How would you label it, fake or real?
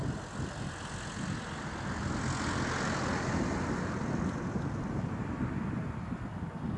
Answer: real